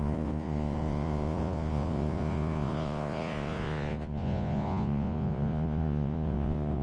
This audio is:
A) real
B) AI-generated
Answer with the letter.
B